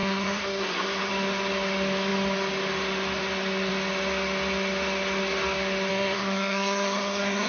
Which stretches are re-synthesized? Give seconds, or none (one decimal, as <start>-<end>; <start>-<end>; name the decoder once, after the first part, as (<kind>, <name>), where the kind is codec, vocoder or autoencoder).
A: 0.0-1.1 (codec, SNAC); 5.9-7.5